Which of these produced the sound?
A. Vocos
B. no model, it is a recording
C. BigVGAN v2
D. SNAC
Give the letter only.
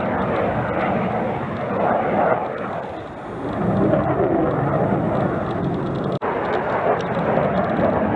B